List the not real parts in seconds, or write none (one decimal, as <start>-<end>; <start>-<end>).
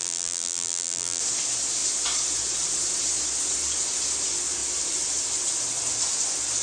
0.0-1.2